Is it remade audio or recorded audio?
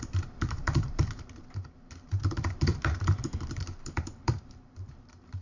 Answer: remade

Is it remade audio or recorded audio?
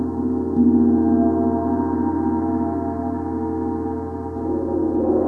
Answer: recorded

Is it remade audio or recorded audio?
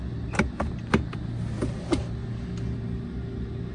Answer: recorded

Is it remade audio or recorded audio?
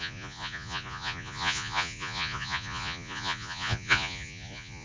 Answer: remade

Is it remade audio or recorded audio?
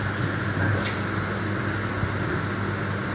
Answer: recorded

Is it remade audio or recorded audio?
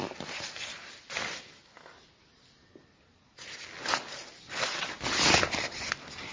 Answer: recorded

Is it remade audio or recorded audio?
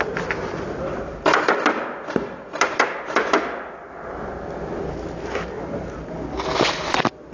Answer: recorded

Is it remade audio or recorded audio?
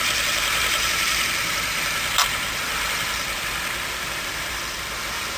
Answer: remade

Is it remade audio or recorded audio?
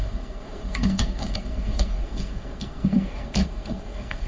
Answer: remade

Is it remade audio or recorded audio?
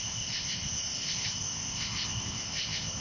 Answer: remade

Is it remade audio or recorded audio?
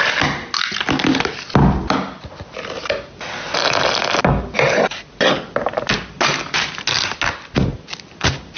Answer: recorded